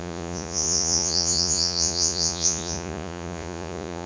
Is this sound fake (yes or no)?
yes